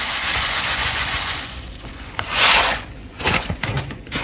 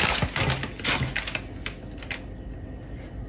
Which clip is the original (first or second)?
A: second